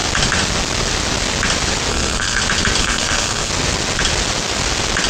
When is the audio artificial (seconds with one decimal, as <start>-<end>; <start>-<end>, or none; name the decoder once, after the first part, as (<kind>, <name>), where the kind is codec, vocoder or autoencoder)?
1.9-2.4 (codec, SNAC); 2.8-3.5